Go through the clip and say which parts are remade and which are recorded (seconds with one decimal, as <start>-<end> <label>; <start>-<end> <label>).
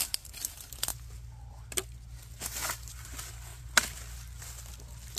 0.0-5.2 recorded